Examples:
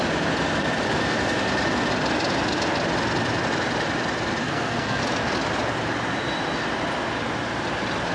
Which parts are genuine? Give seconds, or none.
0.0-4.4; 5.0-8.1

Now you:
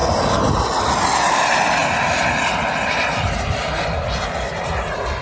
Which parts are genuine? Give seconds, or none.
0.0-5.2

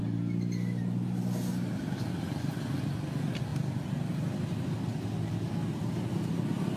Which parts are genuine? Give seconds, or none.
0.0-6.8

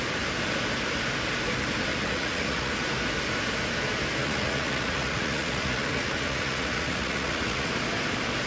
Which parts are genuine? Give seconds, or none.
0.0-1.9; 2.7-4.2; 7.7-8.5

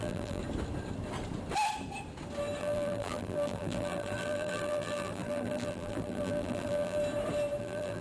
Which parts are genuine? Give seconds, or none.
0.4-2.6; 7.0-7.6

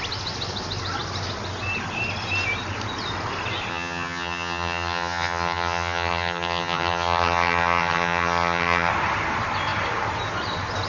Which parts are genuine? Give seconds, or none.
0.0-3.7; 8.9-10.9

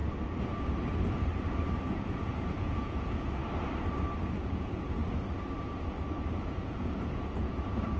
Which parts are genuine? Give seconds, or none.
0.0-1.9; 3.4-4.2; 5.0-6.3